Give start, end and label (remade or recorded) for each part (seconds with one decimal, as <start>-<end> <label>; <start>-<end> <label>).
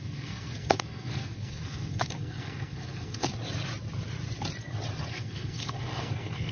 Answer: 0.0-3.3 remade; 3.3-5.1 recorded; 5.1-6.5 remade